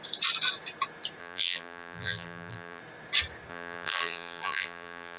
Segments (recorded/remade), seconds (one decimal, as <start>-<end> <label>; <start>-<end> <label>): 0.0-1.2 recorded; 1.2-2.8 remade; 2.8-3.5 recorded; 3.5-5.2 remade